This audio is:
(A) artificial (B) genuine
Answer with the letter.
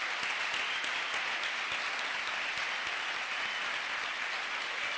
B